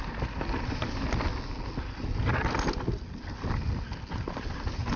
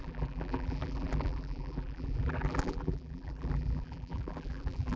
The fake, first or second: second